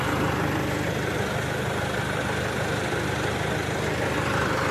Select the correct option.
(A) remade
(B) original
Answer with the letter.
A